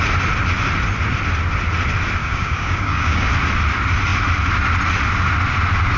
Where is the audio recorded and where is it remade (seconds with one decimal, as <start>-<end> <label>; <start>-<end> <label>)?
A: 0.0-2.2 recorded; 2.2-3.3 remade; 3.3-6.0 recorded